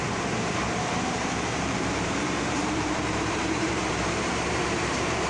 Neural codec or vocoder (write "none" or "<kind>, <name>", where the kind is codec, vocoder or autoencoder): vocoder, BigVGAN v2